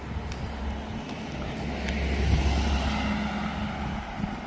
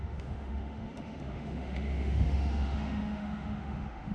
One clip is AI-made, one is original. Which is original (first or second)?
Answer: first